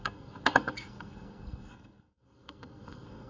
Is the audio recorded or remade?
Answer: remade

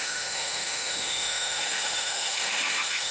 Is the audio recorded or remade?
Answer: remade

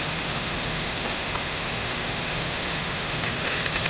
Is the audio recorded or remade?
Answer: remade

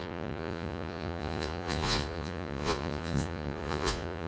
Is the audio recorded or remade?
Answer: remade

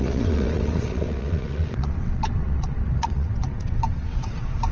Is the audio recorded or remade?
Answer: remade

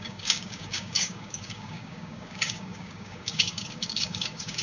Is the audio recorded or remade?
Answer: remade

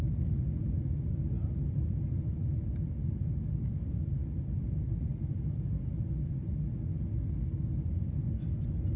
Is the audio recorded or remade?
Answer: recorded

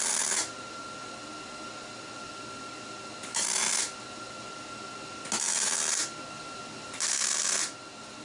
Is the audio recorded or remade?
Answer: recorded